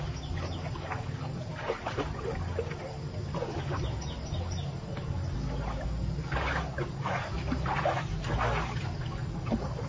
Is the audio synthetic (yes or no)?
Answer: no